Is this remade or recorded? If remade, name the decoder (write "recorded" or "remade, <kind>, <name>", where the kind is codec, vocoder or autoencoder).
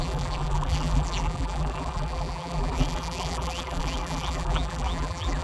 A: remade, vocoder, BigVGAN v2